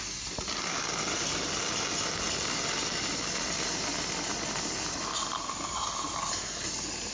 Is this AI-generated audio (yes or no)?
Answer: no